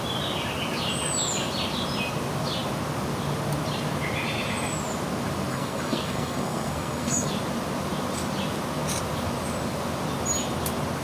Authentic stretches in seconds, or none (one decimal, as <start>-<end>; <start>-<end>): 0.0-5.5; 7.3-11.0